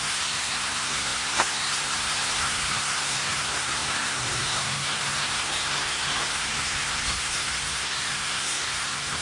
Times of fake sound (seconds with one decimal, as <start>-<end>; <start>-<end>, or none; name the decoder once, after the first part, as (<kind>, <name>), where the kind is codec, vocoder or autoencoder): 0.0-9.2 (codec, SNAC)